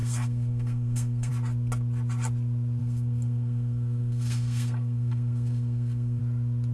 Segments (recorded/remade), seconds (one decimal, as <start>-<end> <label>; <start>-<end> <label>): 0.0-1.3 remade; 1.3-2.8 recorded; 2.8-6.2 remade; 6.2-6.7 recorded